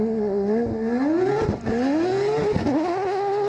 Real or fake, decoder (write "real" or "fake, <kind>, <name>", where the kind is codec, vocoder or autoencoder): real